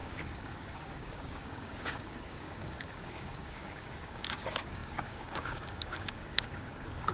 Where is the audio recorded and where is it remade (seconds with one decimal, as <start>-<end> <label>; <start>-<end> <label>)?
0.0-7.1 remade